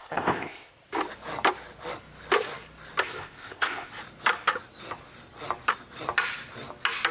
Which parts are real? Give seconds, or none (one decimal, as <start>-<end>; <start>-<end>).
0.7-3.0; 3.9-7.1